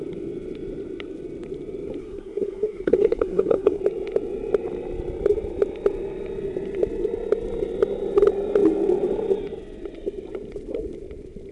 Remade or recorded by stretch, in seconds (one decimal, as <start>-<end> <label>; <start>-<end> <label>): 0.0-2.0 recorded; 2.0-3.8 remade; 3.8-11.5 recorded